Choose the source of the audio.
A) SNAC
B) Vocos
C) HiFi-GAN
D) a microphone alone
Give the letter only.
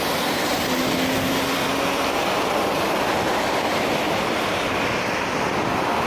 D